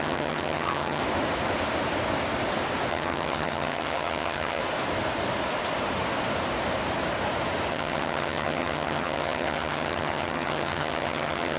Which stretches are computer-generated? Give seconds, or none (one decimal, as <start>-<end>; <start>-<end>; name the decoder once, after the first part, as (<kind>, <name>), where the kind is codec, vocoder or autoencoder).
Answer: 0.0-1.0 (vocoder, HiFi-GAN); 2.9-4.6; 7.7-11.6